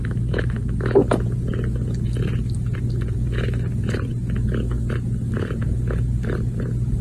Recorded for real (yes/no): yes